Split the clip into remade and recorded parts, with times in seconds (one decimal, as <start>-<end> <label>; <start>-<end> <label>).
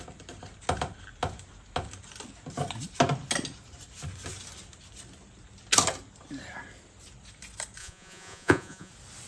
0.0-7.8 recorded; 7.8-8.9 remade; 8.9-9.3 recorded